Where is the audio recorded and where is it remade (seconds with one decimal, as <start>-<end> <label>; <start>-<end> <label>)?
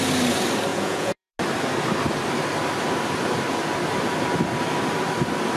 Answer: 0.0-0.7 recorded; 0.7-1.3 remade; 1.3-5.6 recorded